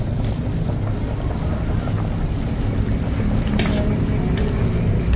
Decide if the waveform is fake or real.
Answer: real